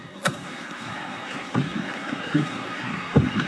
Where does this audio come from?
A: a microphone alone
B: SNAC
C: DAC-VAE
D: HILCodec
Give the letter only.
B